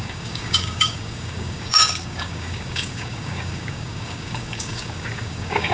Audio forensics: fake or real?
fake